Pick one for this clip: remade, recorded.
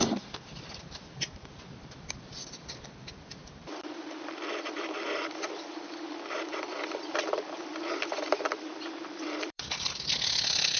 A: remade